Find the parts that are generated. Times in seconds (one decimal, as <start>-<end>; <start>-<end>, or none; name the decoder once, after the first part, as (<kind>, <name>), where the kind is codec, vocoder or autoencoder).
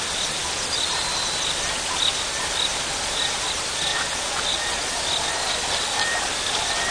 3.9-5.0 (vocoder, Vocos)